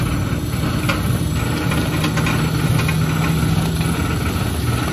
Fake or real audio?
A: real